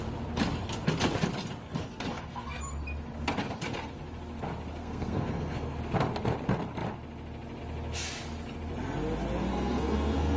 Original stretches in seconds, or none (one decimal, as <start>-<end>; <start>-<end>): 0.0-1.8; 2.6-4.8; 5.8-9.5